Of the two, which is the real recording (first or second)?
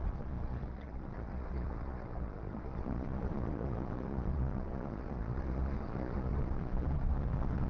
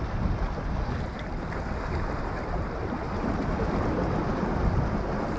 second